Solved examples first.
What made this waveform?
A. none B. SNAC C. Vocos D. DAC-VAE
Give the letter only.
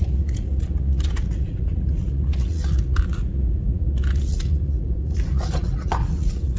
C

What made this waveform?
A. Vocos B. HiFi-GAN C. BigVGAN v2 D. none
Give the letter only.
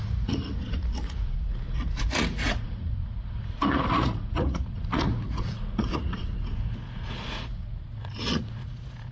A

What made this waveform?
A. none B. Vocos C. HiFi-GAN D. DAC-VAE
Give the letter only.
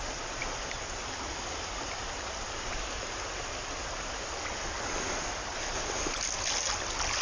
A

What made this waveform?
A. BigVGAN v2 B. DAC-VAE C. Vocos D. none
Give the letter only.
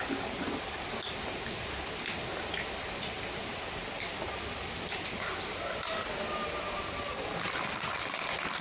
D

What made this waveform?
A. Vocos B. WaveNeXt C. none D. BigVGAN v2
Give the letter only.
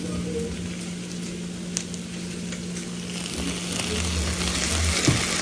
C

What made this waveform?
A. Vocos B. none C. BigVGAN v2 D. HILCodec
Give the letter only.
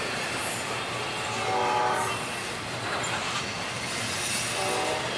B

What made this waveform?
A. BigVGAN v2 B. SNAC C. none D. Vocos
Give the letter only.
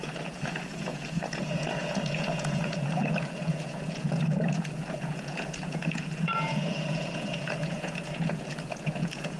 D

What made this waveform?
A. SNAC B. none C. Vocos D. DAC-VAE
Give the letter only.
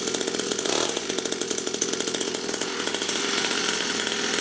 B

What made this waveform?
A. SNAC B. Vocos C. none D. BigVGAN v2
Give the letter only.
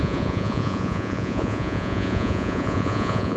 B